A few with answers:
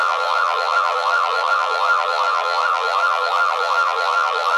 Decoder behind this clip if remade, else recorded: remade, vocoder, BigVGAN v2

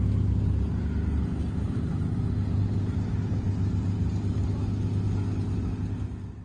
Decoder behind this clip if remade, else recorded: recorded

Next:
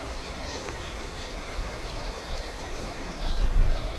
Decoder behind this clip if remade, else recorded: remade, codec, SNAC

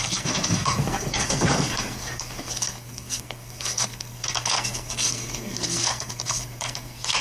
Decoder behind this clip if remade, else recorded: remade, codec, SNAC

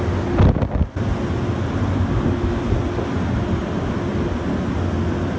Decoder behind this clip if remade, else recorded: recorded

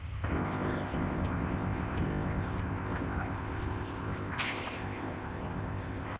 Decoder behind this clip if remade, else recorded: remade, codec, ZipCodec